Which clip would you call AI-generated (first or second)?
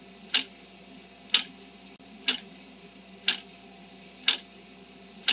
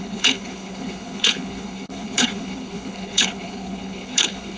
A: second